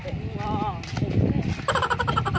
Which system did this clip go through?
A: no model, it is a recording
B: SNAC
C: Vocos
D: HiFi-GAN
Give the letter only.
A